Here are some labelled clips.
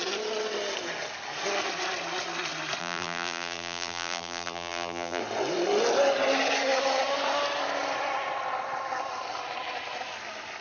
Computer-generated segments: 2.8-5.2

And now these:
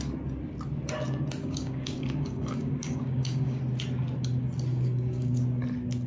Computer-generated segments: 1.4-3.6; 4.7-5.3

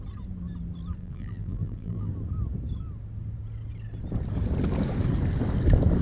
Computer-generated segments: 1.0-2.1

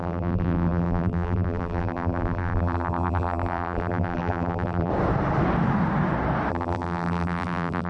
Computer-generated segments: 0.0-4.9; 6.5-7.9

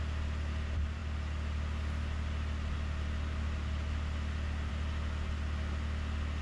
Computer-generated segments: none

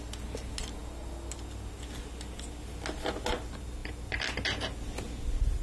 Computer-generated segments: none